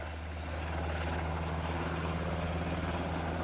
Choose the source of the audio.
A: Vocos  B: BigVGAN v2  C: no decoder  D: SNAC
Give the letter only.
C